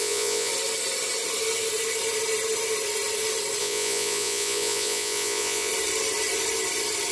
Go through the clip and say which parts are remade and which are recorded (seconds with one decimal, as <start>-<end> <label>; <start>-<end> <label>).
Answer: 0.0-0.5 remade; 0.5-3.6 recorded; 3.6-5.7 remade; 5.7-7.1 recorded